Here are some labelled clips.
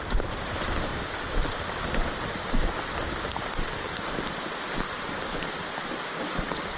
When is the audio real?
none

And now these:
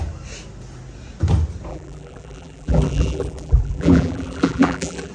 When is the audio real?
0.0-1.7